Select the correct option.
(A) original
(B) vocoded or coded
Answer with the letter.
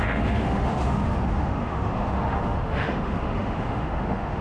B